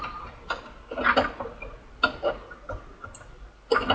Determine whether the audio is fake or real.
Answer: real